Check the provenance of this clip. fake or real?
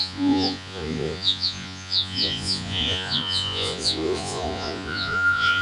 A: fake